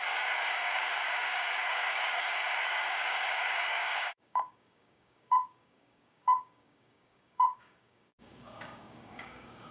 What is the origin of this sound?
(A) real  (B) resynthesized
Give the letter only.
B